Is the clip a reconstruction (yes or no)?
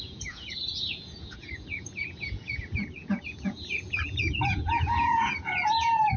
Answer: yes